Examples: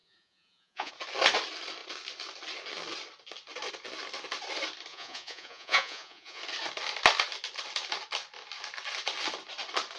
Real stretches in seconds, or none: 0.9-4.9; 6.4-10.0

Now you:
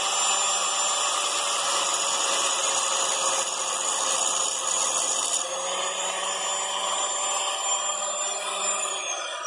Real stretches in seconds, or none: 0.0-9.5

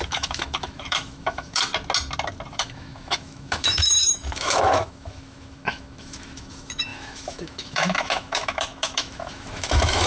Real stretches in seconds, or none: 1.7-2.5

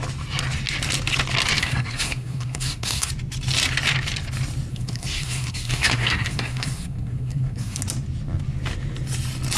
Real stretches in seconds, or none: 0.0-1.6; 3.1-4.7; 7.8-9.6

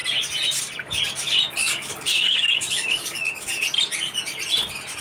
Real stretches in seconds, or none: 0.0-1.6; 3.6-5.0

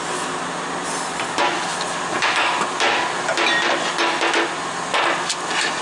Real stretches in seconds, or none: 0.0-5.8

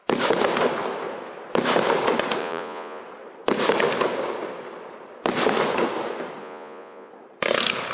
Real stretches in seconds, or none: 0.0-2.4; 3.0-6.4; 7.1-7.9

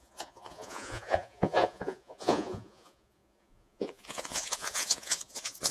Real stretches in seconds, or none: none